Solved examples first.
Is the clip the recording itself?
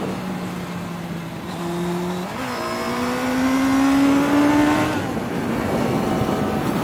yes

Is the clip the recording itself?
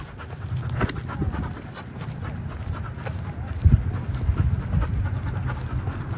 yes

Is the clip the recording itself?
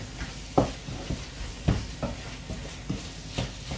yes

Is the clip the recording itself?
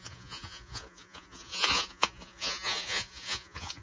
no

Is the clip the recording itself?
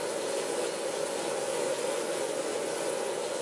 no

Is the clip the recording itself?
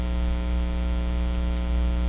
yes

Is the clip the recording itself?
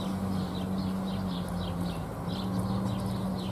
yes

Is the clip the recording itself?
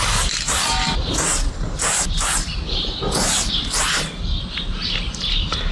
yes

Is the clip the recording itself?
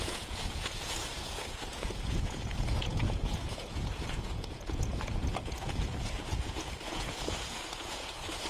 no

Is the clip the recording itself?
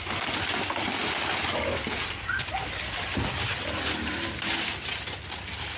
yes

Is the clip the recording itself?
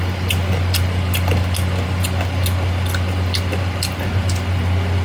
yes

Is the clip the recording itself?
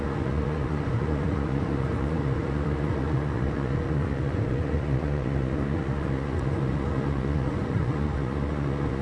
no